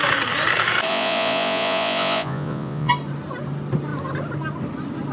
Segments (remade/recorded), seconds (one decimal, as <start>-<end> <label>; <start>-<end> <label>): 0.0-0.9 recorded; 0.9-2.9 remade; 2.9-5.1 recorded